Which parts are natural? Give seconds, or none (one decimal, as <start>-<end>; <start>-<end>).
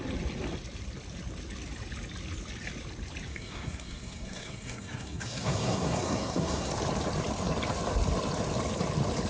0.0-3.3; 6.7-9.3